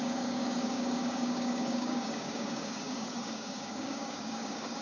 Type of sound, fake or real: fake